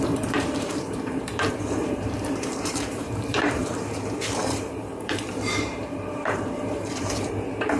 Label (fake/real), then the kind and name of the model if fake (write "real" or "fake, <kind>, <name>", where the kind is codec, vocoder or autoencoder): fake, vocoder, BigVGAN v2